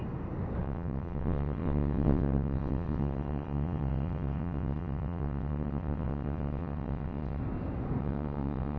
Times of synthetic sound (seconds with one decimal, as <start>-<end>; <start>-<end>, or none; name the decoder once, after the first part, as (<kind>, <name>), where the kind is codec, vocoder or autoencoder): 0.6-7.4 (vocoder, WaveNeXt); 8.0-8.8